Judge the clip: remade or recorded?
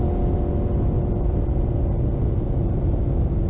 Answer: recorded